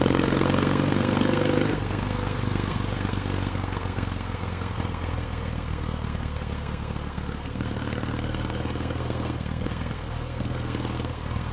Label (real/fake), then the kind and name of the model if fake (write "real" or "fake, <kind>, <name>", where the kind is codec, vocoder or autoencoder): fake, codec, SNAC